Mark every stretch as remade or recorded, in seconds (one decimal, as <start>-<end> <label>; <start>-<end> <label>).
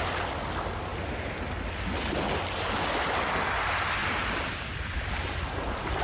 0.0-4.0 recorded; 4.0-5.4 remade; 5.4-6.0 recorded